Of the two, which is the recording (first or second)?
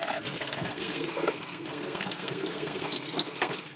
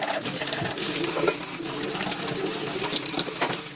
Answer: second